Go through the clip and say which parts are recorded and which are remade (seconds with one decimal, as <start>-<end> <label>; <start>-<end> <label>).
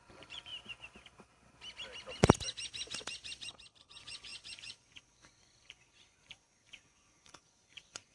0.0-0.5 remade; 0.5-3.8 recorded; 3.8-8.1 remade